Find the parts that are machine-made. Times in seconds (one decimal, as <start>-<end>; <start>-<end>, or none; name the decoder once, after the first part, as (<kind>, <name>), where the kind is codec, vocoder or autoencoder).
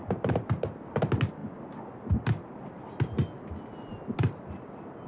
none